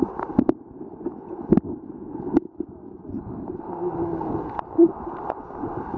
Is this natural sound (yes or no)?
yes